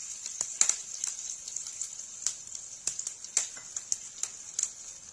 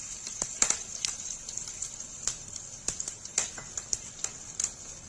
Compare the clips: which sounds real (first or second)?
first